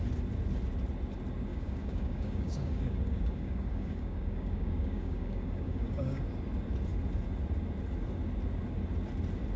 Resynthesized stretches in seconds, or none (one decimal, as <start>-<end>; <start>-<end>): 1.5-6.2